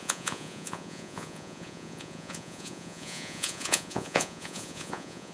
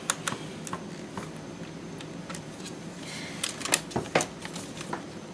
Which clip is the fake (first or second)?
first